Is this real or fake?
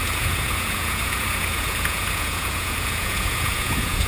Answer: fake